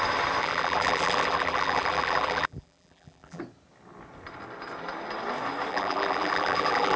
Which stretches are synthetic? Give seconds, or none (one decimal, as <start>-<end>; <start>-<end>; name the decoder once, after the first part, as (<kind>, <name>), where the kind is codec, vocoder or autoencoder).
0.4-3.4 (vocoder, BigVGAN v2); 5.7-7.0